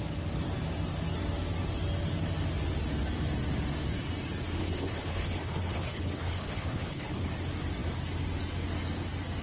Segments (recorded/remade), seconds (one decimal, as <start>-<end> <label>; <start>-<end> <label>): 0.0-4.6 recorded; 4.6-7.3 remade; 7.3-9.4 recorded